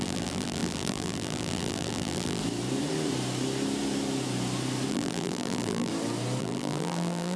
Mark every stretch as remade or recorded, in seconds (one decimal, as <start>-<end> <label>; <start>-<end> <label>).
0.0-2.4 remade; 2.4-4.9 recorded; 4.9-5.9 remade; 5.9-6.4 recorded; 6.4-7.4 remade